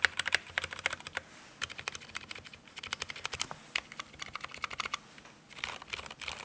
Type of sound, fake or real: real